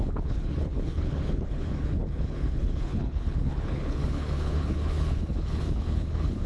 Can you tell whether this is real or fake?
fake